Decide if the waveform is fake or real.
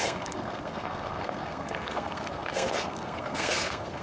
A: fake